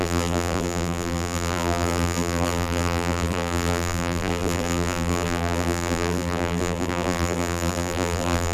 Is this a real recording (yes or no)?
no